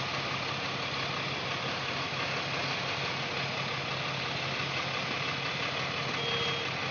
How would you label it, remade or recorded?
recorded